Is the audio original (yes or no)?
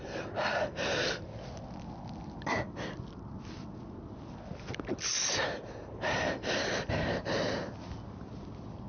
yes